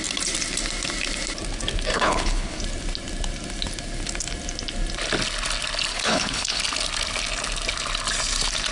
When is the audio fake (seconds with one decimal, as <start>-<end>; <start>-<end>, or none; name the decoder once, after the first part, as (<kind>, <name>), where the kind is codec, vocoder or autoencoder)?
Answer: 1.9-2.6 (codec, HILCodec); 5.9-6.6